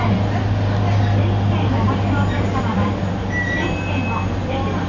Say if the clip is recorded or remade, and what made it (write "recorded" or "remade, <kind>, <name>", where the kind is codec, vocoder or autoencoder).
recorded